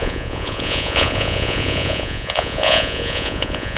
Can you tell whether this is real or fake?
fake